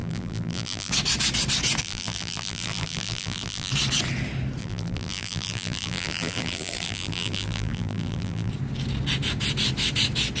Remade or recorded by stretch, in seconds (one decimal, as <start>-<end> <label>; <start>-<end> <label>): 0.0-0.9 remade; 0.9-1.8 recorded; 1.8-3.7 remade; 3.7-4.6 recorded; 4.6-8.5 remade; 8.5-10.4 recorded